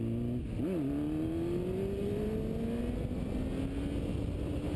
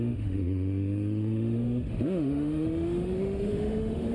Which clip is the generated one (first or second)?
second